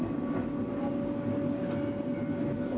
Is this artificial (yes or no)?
no